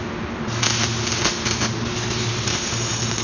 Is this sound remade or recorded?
recorded